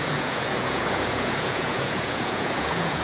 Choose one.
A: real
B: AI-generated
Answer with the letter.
B